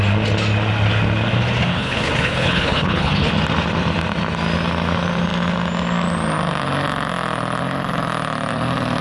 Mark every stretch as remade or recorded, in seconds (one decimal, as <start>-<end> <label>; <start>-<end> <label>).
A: 0.0-1.7 recorded; 1.7-3.3 remade; 3.3-9.0 recorded